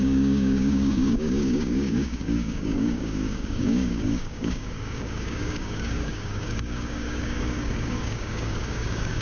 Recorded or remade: remade